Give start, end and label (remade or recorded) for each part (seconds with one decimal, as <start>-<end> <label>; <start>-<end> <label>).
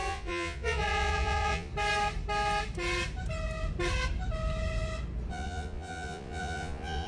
0.0-1.7 remade; 1.7-5.3 recorded; 5.3-7.1 remade